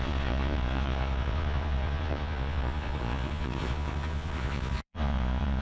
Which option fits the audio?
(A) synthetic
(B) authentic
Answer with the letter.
A